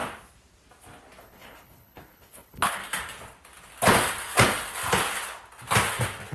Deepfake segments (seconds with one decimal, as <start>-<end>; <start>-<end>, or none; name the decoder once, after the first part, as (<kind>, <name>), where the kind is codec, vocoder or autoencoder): 1.2-2.8 (codec, HILCodec)

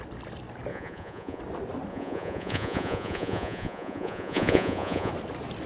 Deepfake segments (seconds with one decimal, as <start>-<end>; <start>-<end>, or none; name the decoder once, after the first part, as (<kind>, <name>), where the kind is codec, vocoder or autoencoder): 0.7-1.4 (vocoder, Vocos); 1.9-5.1

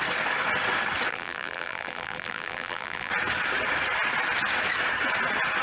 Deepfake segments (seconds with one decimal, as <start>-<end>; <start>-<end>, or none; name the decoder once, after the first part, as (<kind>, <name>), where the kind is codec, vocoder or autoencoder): 1.1-3.1 (vocoder, BigVGAN v2)

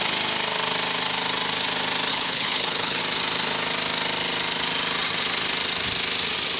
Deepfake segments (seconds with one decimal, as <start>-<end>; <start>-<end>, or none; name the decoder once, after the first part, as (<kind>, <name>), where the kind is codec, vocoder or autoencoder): 2.1-3.0 (codec, HILCodec)

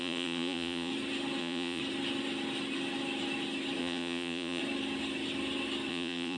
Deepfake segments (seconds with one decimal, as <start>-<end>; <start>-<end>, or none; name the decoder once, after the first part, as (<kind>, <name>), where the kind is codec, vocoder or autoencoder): 0.0-0.9 (vocoder, Vocos); 1.4-1.8; 3.8-4.6; 5.9-6.4

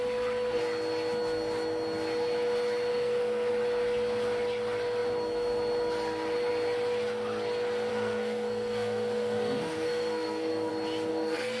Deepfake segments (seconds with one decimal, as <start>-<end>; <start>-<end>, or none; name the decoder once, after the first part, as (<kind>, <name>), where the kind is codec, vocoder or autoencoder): 2.9-3.5 (codec, SNAC); 7.9-10.7; 11.1-11.6